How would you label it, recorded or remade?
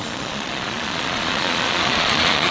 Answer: remade